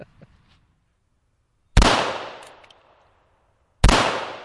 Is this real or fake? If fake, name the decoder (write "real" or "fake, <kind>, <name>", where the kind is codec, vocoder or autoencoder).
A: real